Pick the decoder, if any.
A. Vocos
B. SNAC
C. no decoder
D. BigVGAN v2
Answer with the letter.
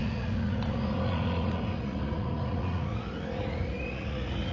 A